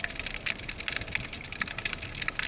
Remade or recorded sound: recorded